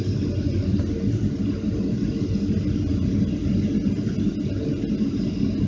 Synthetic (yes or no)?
no